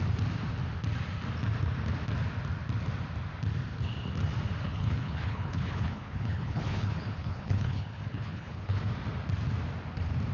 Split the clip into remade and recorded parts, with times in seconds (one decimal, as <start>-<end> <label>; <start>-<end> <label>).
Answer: 0.0-4.6 recorded; 4.6-8.8 remade; 8.8-10.3 recorded